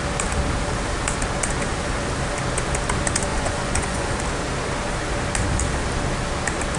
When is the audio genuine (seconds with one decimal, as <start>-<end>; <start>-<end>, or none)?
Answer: 0.0-3.3; 4.1-6.8